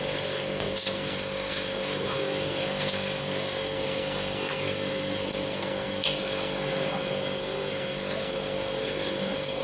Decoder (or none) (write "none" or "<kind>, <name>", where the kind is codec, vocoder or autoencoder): codec, SNAC